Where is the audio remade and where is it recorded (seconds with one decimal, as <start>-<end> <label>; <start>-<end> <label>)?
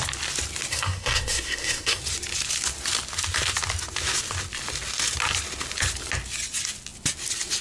0.0-0.7 recorded; 0.7-2.0 remade; 2.0-7.6 recorded